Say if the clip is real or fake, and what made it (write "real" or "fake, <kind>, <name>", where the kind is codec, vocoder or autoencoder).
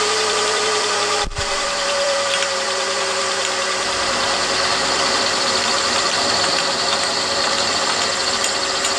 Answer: fake, vocoder, BigVGAN v2